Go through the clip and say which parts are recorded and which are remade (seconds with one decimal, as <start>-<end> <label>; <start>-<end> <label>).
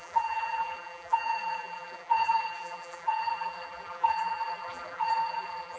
0.0-5.8 remade